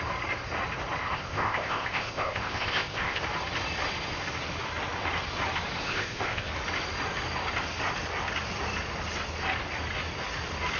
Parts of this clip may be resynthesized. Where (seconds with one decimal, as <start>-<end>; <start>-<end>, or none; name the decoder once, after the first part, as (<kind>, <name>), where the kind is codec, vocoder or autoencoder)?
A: 1.0-3.2 (codec, ZipCodec); 5.8-6.5